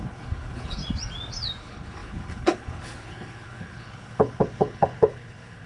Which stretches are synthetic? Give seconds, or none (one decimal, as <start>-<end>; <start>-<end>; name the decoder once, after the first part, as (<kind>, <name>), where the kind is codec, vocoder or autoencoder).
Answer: 0.0-0.8 (codec, HILCodec); 1.6-5.7